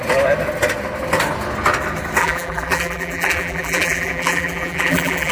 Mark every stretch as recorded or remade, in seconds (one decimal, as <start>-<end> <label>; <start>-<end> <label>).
0.0-2.2 recorded; 2.2-5.3 remade